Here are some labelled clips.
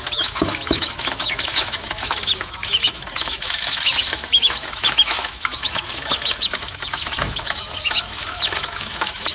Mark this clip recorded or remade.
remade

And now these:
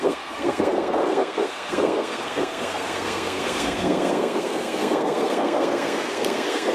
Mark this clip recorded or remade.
remade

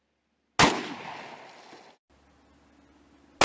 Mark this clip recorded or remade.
recorded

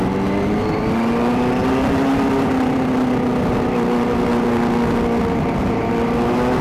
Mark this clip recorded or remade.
recorded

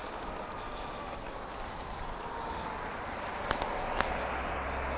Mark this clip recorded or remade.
recorded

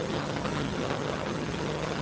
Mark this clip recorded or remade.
remade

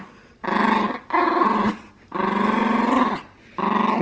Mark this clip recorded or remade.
recorded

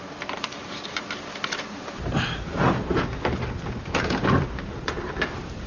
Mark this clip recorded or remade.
remade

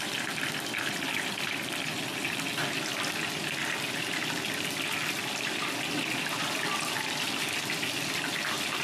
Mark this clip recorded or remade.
recorded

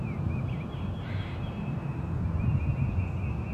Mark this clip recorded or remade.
recorded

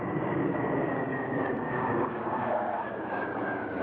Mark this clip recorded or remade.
remade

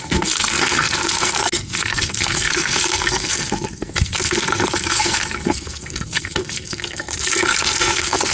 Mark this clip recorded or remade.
remade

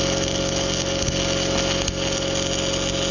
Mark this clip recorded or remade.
recorded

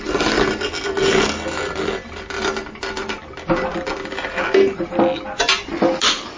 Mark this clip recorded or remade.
recorded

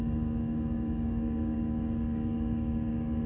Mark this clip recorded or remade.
remade